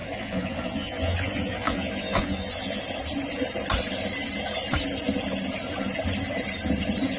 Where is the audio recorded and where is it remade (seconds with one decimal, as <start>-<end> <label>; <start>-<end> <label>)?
0.0-2.8 remade; 2.8-7.2 recorded